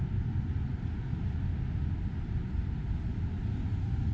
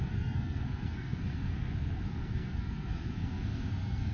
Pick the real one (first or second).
first